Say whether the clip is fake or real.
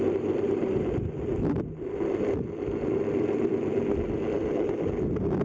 real